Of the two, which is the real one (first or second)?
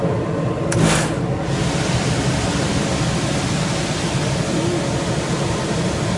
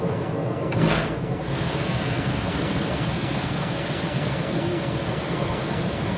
first